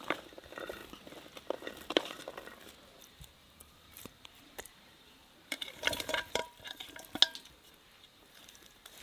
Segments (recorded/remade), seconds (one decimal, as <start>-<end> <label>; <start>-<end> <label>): 0.0-0.8 remade; 0.8-3.0 recorded; 3.0-6.8 remade; 6.8-7.4 recorded; 7.4-9.0 remade

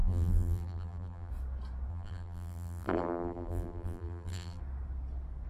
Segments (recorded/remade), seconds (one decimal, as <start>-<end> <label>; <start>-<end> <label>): 0.0-1.3 remade; 1.3-1.9 recorded; 1.9-4.6 remade; 4.6-5.5 recorded

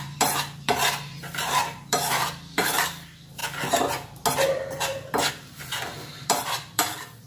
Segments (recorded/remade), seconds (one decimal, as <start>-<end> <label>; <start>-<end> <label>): 0.0-3.4 remade; 3.4-5.3 recorded; 5.3-7.3 remade

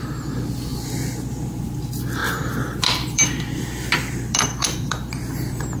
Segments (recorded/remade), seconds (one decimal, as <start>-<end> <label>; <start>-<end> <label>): 0.0-2.2 recorded; 2.2-5.8 remade

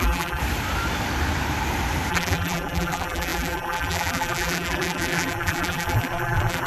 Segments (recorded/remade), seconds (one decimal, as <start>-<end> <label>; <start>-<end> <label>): 0.0-0.4 remade; 0.4-2.1 recorded; 2.1-6.7 remade

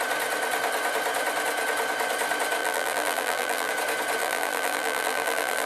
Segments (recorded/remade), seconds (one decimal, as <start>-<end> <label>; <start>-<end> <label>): 0.0-2.6 recorded; 2.6-3.7 remade; 3.7-4.2 recorded; 4.2-5.7 remade

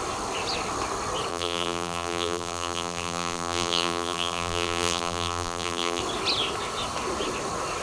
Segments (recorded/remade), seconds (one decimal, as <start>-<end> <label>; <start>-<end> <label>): 0.0-1.3 recorded; 1.3-6.0 remade; 6.0-7.8 recorded